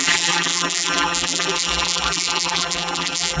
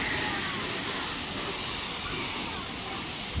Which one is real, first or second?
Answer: second